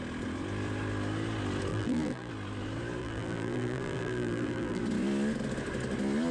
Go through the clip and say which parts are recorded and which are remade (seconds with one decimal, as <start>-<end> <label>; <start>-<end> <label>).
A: 0.0-1.7 recorded; 1.7-2.3 remade; 2.3-3.0 recorded; 3.0-4.8 remade; 4.8-6.3 recorded